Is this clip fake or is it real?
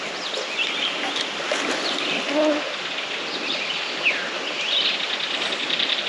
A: real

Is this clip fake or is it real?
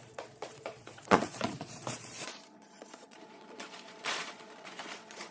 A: fake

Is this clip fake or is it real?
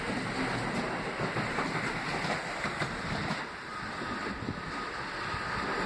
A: real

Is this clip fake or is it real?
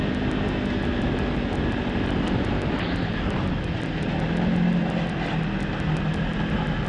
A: real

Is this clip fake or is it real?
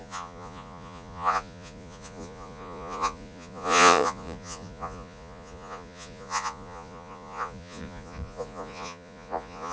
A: fake